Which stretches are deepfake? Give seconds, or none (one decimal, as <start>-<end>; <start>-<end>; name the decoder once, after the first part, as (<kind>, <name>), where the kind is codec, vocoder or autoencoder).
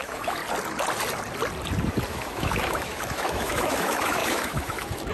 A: 0.0-0.4 (autoencoder, DAC-VAE); 2.1-5.1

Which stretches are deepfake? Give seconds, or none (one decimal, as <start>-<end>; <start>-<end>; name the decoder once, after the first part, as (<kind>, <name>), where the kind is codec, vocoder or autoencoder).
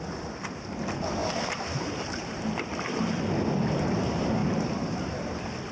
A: 1.2-2.8 (vocoder, BigVGAN v2); 4.4-5.0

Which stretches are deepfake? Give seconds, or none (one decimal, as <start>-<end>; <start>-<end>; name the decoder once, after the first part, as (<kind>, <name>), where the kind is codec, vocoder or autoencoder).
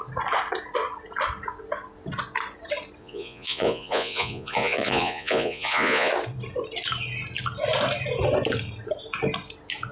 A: 3.0-6.1 (vocoder, Vocos)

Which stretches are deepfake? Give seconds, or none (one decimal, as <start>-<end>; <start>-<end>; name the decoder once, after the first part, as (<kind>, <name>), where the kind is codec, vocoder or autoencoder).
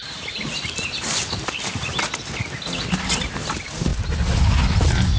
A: 0.0-1.9 (vocoder, BigVGAN v2); 3.2-3.9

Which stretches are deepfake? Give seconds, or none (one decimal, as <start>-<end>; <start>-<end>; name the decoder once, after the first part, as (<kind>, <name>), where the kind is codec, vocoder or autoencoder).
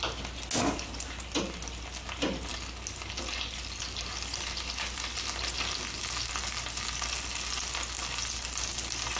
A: none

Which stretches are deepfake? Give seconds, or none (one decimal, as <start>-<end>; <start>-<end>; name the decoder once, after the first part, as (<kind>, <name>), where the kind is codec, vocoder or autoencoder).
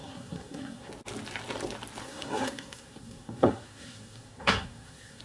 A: 0.0-0.9 (codec, SNAC); 2.0-5.2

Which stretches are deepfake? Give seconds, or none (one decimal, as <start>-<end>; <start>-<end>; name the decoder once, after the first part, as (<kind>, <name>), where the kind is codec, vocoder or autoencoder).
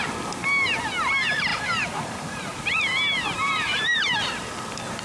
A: 1.5-4.5 (vocoder, BigVGAN v2)